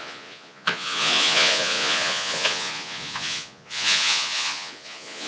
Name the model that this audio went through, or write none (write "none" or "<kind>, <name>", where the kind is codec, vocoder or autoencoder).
vocoder, Vocos